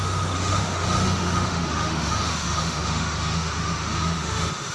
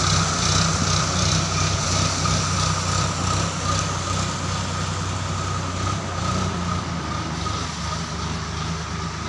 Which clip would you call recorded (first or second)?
second